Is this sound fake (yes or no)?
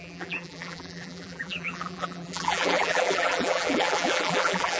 yes